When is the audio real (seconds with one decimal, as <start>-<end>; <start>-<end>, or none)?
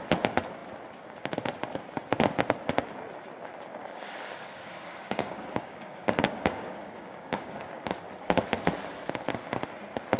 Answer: 0.0-3.7; 7.8-10.2